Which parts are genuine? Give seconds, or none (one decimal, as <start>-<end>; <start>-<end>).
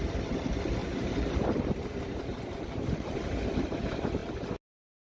0.0-0.8; 3.4-5.1